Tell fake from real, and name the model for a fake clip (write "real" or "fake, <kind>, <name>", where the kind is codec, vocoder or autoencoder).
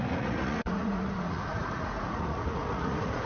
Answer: fake, vocoder, Vocos